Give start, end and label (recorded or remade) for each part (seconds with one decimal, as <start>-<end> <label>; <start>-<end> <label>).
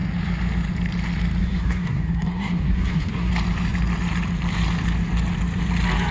0.0-1.4 recorded; 1.4-3.3 remade; 3.3-6.1 recorded